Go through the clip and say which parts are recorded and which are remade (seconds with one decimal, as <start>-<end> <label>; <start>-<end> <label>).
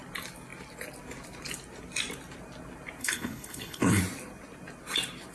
0.0-3.0 recorded; 3.0-4.0 remade; 4.0-5.3 recorded